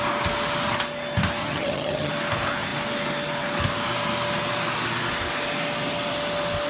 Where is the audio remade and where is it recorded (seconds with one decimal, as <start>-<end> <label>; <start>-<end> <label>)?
0.0-1.4 recorded; 1.4-2.1 remade; 2.1-6.7 recorded